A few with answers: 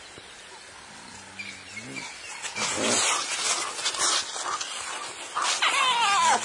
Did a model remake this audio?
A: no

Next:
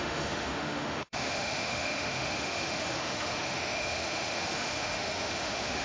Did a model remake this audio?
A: yes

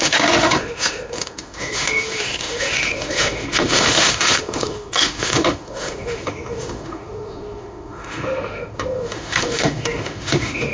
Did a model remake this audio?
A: yes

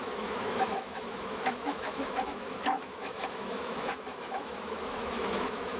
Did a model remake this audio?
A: yes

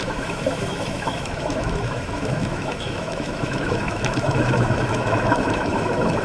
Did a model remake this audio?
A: yes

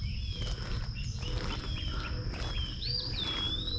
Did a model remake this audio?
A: no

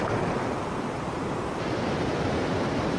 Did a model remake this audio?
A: no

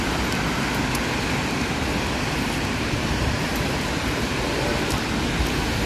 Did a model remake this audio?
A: no